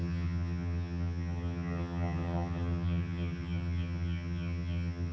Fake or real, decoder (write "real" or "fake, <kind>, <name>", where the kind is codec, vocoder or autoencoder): fake, vocoder, HiFi-GAN